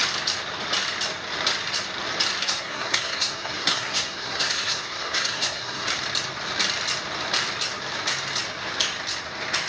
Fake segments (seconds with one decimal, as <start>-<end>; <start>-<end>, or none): 2.4-5.9